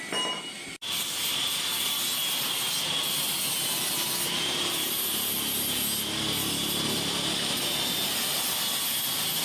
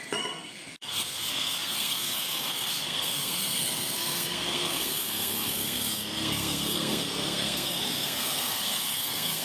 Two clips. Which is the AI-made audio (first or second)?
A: second